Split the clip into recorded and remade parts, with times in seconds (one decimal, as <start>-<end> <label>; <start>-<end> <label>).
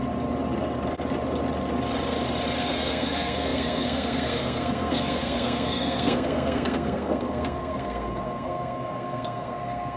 0.0-2.6 recorded; 2.6-10.0 remade